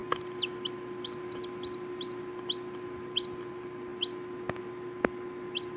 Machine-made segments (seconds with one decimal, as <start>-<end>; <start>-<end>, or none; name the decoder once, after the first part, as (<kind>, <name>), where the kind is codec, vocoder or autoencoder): none